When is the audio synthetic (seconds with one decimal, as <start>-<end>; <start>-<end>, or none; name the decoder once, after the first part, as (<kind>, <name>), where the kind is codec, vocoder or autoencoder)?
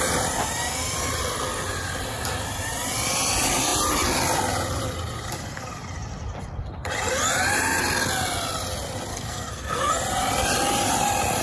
9.1-9.9 (codec, SNAC)